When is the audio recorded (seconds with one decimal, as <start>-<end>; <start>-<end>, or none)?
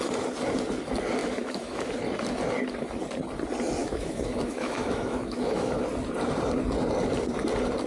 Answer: 0.0-1.2; 1.9-3.8; 5.8-7.9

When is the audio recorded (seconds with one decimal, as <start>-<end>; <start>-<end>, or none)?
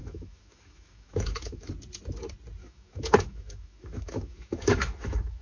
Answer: 1.7-2.6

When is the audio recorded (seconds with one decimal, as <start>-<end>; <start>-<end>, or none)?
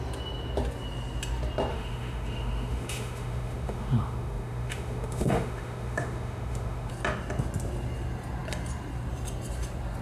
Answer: 0.0-1.7; 6.9-10.0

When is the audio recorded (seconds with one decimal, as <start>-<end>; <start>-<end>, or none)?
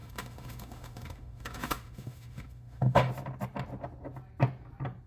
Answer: 3.1-5.1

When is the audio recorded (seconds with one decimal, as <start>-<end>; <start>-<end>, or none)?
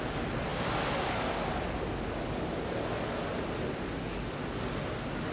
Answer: 0.0-5.3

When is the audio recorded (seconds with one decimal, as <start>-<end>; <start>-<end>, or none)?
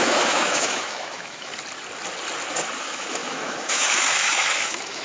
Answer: 1.5-2.8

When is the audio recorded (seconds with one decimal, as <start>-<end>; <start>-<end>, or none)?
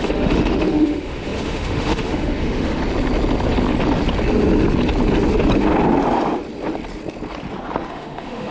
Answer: 2.8-7.9